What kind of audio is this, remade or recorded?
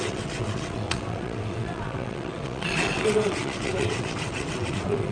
remade